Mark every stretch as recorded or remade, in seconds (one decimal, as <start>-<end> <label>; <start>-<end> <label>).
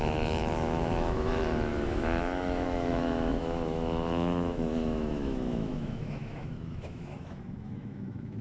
0.0-8.4 remade